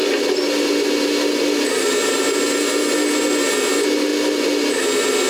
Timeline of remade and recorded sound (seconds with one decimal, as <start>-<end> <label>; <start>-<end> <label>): 0.0-5.3 recorded